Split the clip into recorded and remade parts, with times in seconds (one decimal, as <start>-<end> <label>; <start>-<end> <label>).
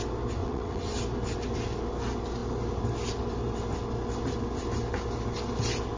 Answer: 0.0-0.4 recorded; 0.4-0.9 remade; 0.9-6.0 recorded